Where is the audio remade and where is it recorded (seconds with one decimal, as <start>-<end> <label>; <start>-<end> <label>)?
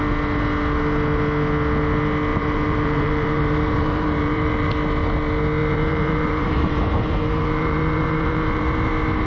0.0-2.3 recorded; 2.3-4.7 remade; 4.7-5.6 recorded; 5.6-8.9 remade; 8.9-9.3 recorded